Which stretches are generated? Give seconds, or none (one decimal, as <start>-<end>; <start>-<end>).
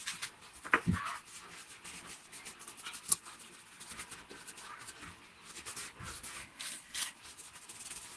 6.4-7.2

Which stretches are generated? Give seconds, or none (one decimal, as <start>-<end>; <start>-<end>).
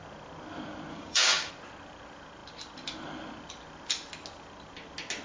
0.9-1.5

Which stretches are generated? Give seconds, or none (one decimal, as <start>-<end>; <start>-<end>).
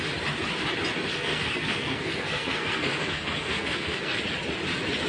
1.1-4.2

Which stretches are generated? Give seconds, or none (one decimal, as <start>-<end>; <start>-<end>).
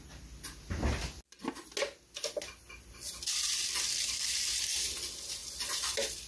none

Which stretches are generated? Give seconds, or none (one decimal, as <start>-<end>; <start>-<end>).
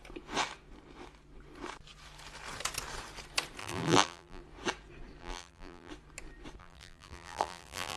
3.6-4.4; 5.2-5.9; 6.6-8.0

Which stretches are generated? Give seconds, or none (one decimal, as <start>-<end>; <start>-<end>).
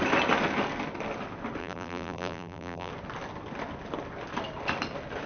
1.6-2.9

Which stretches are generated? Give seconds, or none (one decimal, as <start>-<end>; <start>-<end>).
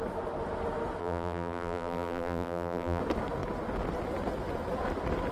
1.0-3.0